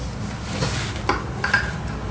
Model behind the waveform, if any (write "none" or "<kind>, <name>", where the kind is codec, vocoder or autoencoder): none